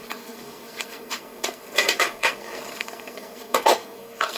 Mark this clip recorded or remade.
remade